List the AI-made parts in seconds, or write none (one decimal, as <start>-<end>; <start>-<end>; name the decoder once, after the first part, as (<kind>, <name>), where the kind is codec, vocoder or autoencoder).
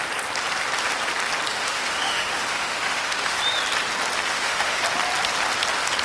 1.5-3.4 (autoencoder, DAC-VAE); 4.3-4.8